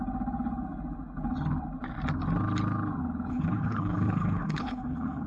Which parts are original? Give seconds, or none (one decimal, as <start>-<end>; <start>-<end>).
0.0-3.3